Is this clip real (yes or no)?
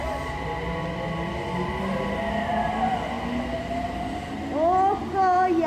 yes